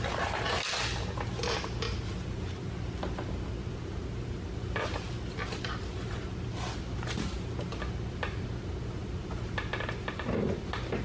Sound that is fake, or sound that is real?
real